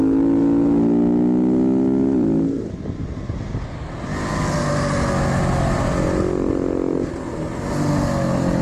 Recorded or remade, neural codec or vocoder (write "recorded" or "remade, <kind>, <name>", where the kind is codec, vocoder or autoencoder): recorded